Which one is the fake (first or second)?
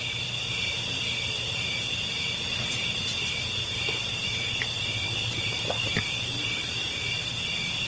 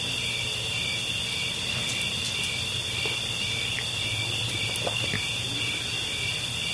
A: first